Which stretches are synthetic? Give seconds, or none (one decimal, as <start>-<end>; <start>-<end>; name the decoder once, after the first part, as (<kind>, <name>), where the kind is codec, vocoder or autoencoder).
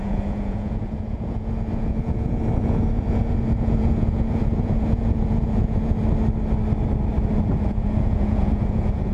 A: 0.0-6.0 (vocoder, Vocos); 7.3-9.1